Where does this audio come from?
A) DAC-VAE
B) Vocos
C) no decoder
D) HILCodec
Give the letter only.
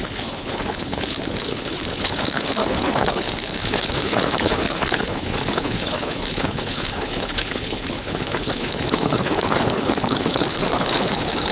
D